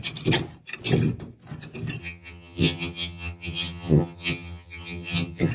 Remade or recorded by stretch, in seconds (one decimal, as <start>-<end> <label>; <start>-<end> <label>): 0.0-2.0 recorded; 2.0-5.5 remade